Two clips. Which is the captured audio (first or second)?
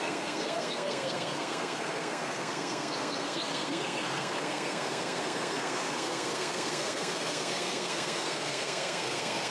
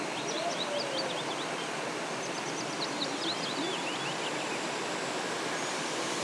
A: second